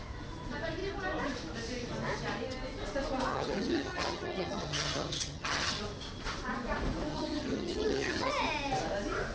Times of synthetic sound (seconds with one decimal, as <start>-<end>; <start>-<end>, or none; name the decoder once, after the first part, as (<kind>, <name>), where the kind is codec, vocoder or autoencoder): 3.3-5.8 (vocoder, HiFi-GAN); 7.1-8.3